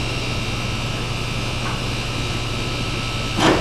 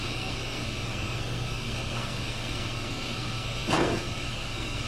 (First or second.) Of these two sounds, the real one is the first